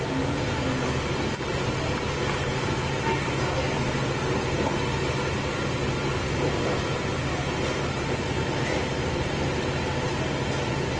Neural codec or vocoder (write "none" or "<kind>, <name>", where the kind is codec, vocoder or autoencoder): none